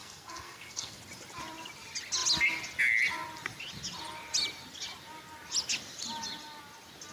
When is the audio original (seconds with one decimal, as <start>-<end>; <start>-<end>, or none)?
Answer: 1.0-7.1